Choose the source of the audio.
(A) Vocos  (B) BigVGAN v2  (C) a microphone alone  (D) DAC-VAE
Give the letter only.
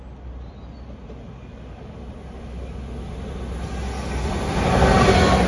C